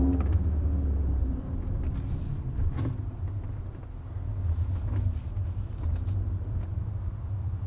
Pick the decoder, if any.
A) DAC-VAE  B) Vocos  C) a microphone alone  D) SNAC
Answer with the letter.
C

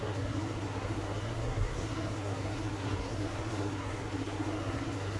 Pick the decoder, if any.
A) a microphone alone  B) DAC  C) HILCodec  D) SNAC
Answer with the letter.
D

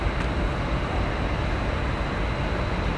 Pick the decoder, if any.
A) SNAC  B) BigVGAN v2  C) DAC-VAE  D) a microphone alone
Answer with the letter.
D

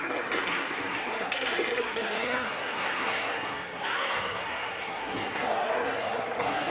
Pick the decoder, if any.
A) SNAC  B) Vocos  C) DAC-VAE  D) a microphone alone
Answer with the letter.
A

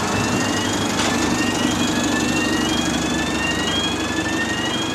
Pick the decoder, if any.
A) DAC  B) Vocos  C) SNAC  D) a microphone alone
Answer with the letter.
D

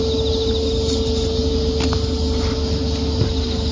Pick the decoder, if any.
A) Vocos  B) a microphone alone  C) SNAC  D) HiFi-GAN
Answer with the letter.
B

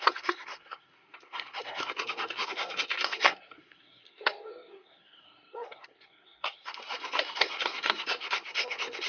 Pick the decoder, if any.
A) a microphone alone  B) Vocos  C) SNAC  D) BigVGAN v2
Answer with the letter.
C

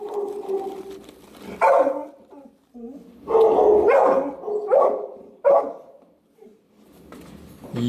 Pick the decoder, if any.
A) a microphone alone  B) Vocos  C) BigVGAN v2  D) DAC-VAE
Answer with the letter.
A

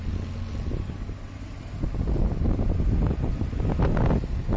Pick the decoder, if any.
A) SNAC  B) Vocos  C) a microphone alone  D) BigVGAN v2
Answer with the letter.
C